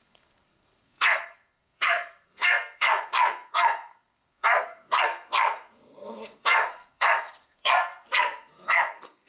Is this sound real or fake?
fake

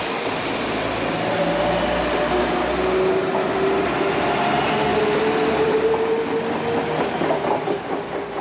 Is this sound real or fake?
real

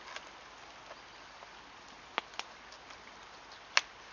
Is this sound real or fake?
real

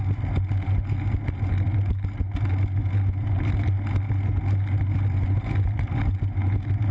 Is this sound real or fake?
real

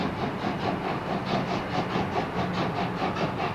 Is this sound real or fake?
real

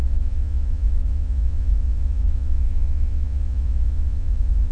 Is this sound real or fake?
fake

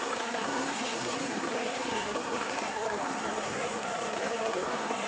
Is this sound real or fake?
fake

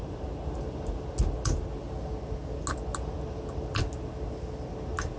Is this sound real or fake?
real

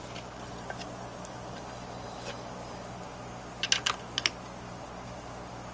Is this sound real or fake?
real